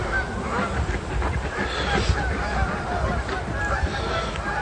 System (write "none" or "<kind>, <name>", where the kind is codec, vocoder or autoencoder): none